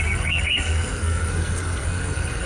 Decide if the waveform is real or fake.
fake